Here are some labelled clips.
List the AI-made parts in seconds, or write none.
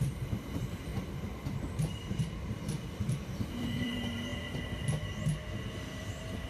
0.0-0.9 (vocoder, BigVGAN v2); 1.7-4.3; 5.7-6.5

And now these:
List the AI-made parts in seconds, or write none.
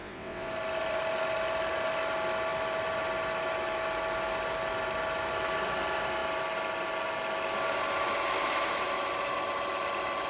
0.0-0.5 (vocoder, WaveNeXt)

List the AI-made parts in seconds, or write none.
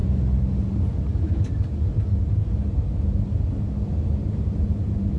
none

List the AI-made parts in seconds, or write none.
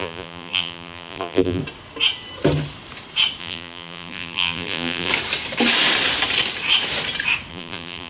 0.0-1.6 (vocoder, BigVGAN v2); 3.4-5.1; 7.5-8.1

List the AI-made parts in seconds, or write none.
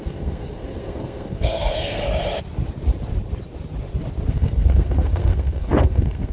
0.0-2.0 (codec, SNAC); 4.3-6.3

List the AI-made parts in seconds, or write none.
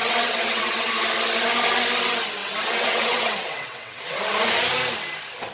0.0-0.9 (vocoder, WaveNeXt); 2.4-4.2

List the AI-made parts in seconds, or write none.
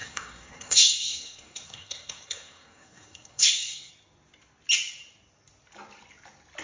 0.0-3.9 (codec, SNAC)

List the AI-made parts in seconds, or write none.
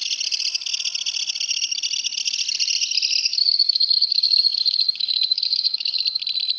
3.3-6.0 (codec, DAC)